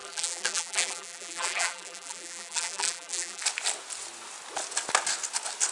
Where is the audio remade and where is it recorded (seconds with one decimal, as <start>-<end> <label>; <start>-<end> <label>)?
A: 0.0-3.4 remade; 3.4-5.7 recorded